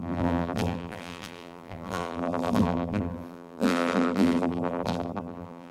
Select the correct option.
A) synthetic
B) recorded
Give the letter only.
A